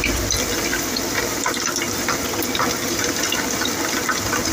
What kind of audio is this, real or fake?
fake